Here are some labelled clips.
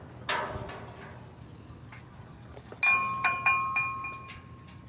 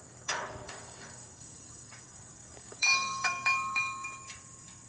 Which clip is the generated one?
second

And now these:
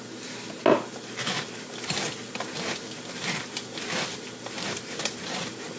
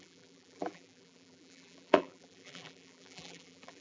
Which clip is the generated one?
second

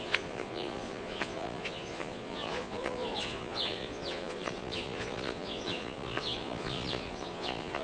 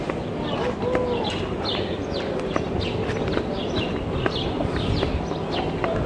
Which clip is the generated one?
first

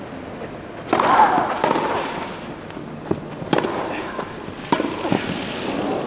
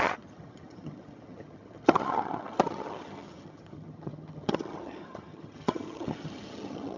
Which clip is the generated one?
second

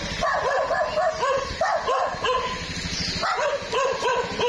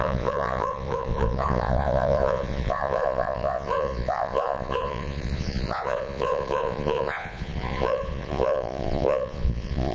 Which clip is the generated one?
second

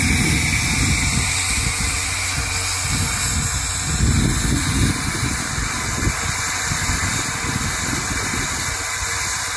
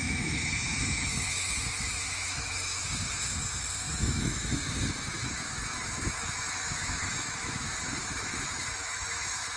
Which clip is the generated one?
second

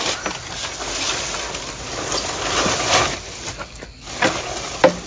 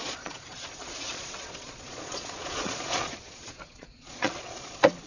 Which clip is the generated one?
second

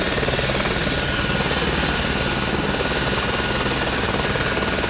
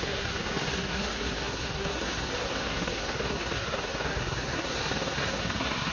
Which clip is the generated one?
second